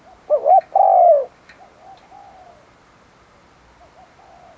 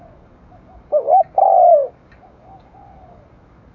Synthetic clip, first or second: second